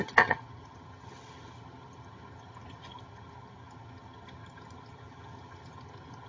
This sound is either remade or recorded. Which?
remade